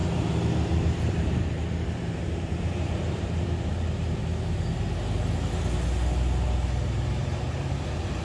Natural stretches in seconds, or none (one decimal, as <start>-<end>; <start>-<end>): 3.7-7.1